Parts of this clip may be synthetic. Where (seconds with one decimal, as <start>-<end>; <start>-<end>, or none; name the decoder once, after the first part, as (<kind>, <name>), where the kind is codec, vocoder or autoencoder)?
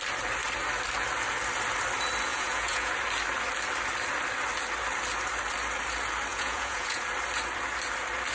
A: 2.3-2.9 (vocoder, Vocos); 6.3-7.0